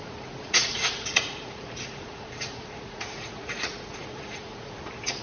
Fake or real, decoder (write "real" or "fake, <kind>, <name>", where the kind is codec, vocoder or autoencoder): fake, vocoder, Vocos